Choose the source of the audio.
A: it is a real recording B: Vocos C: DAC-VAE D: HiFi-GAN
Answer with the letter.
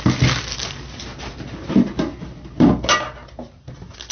A